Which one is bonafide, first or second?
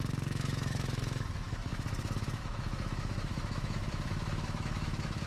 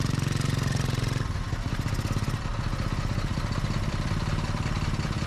second